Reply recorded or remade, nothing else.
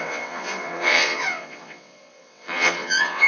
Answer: remade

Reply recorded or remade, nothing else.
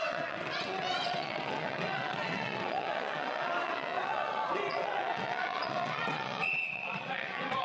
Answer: remade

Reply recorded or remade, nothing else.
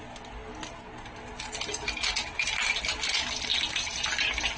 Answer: recorded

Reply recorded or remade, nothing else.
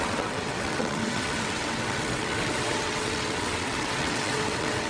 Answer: remade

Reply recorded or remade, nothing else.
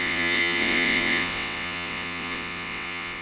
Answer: remade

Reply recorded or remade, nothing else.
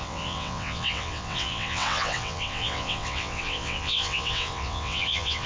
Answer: remade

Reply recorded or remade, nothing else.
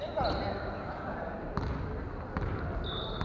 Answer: recorded